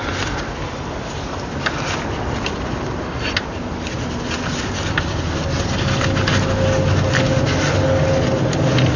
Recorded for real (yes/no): yes